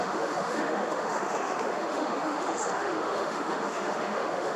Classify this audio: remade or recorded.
remade